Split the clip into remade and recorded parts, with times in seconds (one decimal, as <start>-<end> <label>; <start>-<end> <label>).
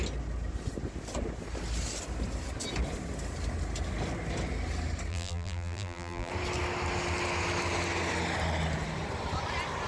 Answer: 0.0-5.1 recorded; 5.1-6.3 remade; 6.3-9.9 recorded